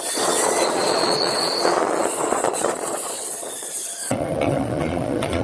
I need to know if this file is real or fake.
fake